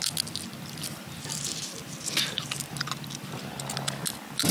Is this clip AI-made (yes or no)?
no